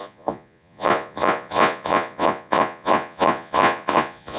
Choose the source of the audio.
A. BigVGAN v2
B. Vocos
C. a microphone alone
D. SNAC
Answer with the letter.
B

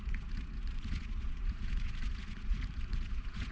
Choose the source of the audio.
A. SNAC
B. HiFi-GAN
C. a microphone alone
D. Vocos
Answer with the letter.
D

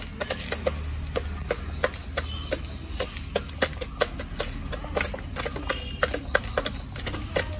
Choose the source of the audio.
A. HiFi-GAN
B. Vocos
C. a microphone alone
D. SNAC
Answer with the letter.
C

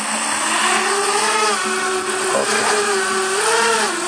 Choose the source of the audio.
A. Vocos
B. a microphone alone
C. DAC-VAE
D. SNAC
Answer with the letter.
B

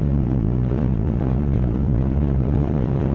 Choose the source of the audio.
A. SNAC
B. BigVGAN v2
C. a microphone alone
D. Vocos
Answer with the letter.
D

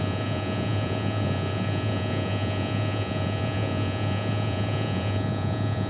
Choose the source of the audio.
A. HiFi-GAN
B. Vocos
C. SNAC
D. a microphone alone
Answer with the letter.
B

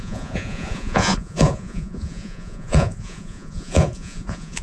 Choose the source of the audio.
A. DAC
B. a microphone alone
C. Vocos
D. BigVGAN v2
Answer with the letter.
C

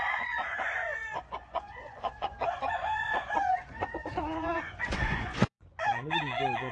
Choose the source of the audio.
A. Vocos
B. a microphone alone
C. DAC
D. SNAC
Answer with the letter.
A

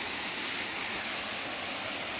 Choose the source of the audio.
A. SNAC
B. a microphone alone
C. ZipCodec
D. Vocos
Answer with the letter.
B